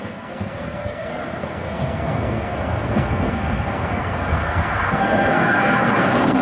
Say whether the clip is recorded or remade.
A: remade